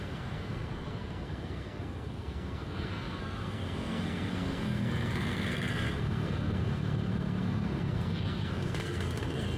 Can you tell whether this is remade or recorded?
remade